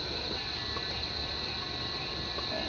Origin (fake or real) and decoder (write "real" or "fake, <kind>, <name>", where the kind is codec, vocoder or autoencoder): real